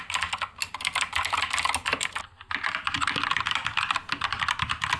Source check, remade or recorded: recorded